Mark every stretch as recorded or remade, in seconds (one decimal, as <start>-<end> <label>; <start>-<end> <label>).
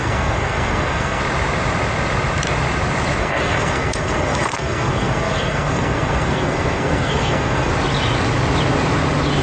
0.0-1.2 remade; 1.2-3.2 recorded; 3.2-7.7 remade; 7.7-9.4 recorded